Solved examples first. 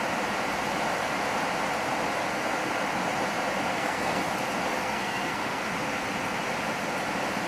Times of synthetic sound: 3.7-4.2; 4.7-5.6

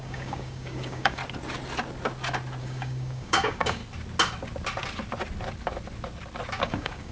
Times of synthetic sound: 0.0-1.2; 2.6-3.8; 6.6-7.1

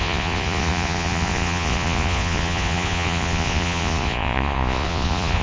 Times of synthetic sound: 0.0-5.4